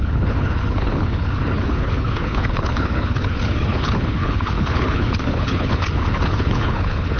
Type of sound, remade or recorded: remade